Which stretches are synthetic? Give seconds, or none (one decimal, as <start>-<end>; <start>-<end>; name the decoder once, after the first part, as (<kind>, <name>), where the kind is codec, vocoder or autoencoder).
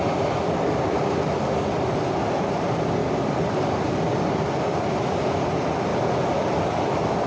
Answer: 0.0-5.9 (vocoder, BigVGAN v2); 6.5-7.3